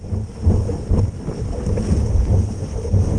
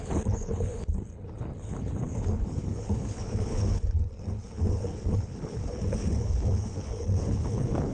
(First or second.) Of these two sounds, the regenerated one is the second